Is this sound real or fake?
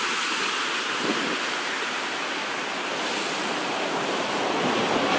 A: real